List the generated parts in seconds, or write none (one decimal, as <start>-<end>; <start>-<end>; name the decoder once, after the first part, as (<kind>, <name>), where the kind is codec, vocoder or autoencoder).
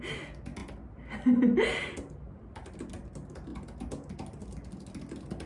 none